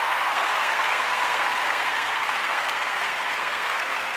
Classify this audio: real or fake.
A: fake